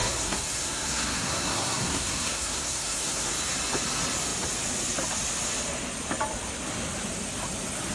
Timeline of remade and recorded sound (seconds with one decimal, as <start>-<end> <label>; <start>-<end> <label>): 0.0-3.3 remade; 3.3-7.9 recorded